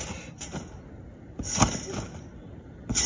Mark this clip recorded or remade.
recorded